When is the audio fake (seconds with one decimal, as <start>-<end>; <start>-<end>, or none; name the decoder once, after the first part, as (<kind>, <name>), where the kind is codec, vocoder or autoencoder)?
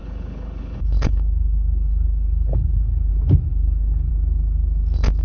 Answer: 0.0-3.1 (codec, HILCodec); 3.5-4.1